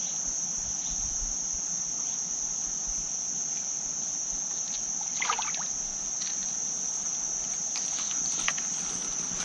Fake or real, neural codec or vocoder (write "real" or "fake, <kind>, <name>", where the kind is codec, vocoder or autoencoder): real